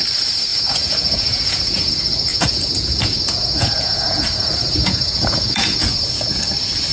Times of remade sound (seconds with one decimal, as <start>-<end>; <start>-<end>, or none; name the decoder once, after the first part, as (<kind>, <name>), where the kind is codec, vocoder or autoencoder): 0.5-1.9 (vocoder, Vocos); 2.3-6.4